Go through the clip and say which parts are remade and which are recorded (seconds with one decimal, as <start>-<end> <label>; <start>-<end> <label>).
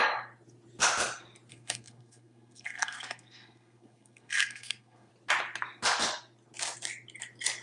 0.0-1.5 recorded; 1.5-5.1 remade; 5.1-7.6 recorded